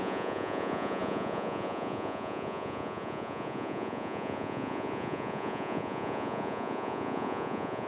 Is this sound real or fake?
fake